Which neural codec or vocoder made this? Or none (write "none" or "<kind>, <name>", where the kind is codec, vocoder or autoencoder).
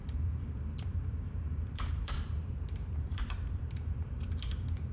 vocoder, BigVGAN v2